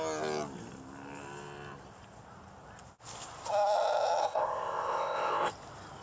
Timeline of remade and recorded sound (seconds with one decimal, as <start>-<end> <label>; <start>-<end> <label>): 0.0-4.2 recorded; 4.2-5.5 remade; 5.5-6.0 recorded